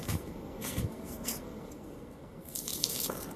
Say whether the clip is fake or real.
fake